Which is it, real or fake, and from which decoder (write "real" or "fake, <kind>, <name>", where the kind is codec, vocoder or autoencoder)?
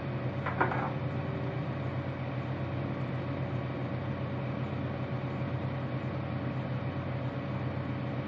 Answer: real